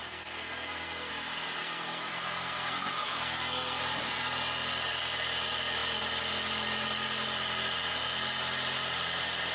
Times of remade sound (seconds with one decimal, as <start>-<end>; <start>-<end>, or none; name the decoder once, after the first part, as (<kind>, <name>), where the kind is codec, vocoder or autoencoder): 0.0-1.1 (codec, SNAC); 1.6-3.8

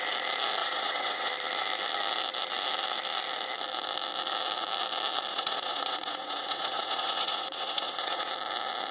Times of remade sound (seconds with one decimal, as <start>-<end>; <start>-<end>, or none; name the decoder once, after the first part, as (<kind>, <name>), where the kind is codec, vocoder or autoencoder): 0.6-1.3 (vocoder, WaveNeXt); 5.3-8.3

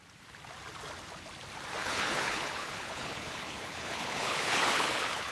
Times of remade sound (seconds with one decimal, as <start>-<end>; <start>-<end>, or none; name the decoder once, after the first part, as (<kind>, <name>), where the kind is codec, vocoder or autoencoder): 1.8-5.3 (codec, HILCodec)

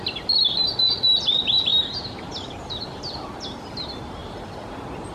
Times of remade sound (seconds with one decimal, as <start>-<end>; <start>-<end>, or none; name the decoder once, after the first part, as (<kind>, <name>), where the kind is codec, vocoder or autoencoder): 0.0-5.1 (vocoder, BigVGAN v2)